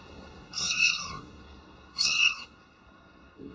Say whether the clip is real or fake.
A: fake